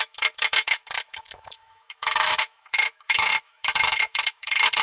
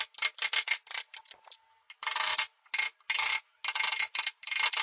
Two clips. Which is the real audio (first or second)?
second